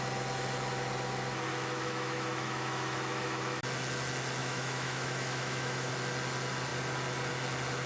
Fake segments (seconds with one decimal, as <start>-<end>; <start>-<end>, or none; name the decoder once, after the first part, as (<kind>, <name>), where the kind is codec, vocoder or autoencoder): 1.5-3.6 (autoencoder, DAC-VAE); 4.4-5.9